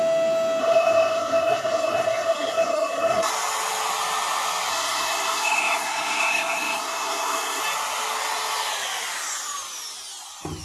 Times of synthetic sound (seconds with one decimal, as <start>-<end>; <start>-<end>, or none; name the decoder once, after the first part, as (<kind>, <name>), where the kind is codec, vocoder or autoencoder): 0.6-3.3 (codec, SNAC); 4.7-7.6